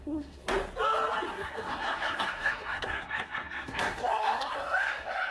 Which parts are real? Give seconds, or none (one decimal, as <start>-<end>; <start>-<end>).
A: 0.4-1.3